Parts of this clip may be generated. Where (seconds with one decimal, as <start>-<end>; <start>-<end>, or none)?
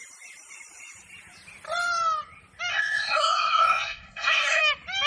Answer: 2.7-4.6